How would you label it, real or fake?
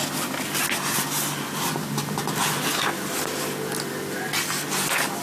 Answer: real